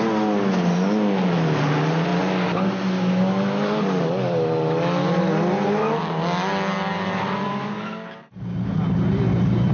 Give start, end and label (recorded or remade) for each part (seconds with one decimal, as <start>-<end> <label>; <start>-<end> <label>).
0.0-9.7 recorded